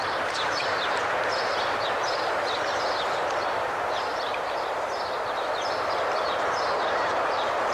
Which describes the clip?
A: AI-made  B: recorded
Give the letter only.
A